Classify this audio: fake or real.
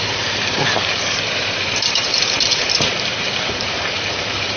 fake